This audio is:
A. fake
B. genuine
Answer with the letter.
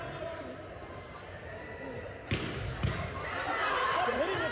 B